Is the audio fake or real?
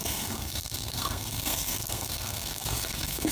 fake